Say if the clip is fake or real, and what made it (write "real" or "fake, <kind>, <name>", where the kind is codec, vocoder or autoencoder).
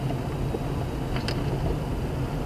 real